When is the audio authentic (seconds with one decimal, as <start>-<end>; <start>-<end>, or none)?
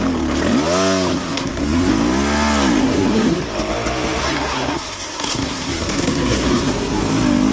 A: 0.0-1.1; 1.9-2.8; 3.4-4.2; 7.0-7.5